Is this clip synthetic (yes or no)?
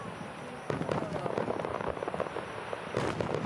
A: yes